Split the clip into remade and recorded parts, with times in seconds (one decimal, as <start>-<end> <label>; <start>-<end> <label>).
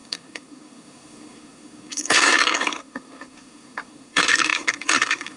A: 0.0-5.4 remade